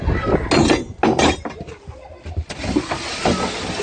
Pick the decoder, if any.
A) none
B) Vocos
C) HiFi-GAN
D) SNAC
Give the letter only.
A